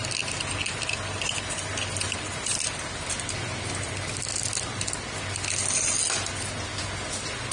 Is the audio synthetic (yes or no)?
no